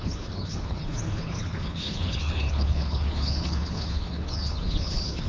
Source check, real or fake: fake